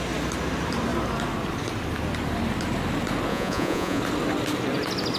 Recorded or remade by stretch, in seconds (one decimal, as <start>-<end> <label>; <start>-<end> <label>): 0.0-3.3 recorded; 3.3-4.0 remade; 4.0-5.2 recorded